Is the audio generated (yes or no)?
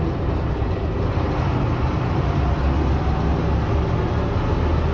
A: no